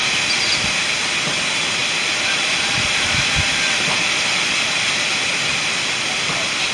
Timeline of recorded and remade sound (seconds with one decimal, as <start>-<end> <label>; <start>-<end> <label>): 0.0-6.7 recorded